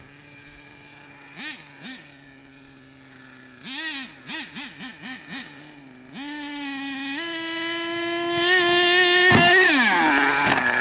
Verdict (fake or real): real